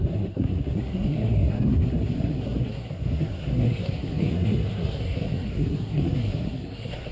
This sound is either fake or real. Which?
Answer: fake